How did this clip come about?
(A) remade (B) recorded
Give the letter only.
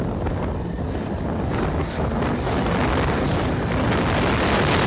B